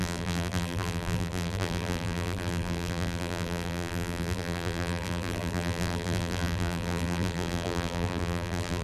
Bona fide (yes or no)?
no